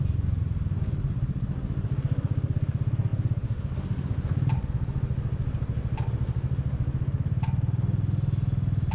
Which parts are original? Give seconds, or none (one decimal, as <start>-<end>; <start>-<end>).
0.0-8.9